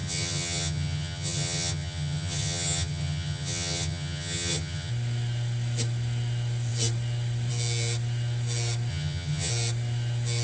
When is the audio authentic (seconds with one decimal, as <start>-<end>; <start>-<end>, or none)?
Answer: 4.9-8.9; 9.5-10.4